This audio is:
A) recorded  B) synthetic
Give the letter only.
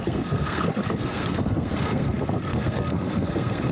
B